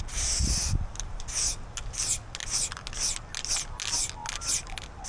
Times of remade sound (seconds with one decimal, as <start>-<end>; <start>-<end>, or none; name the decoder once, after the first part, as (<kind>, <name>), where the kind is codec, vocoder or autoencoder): none